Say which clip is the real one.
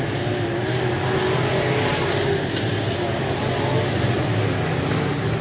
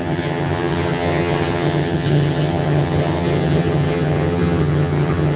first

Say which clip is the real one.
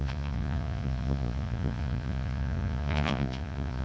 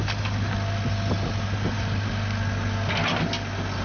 second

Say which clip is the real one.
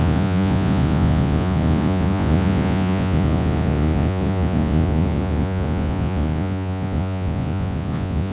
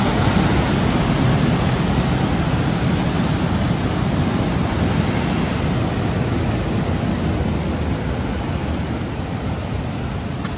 second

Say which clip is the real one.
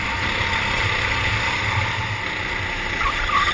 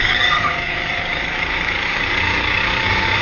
first